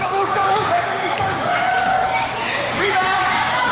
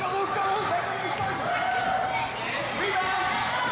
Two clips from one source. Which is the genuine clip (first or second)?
second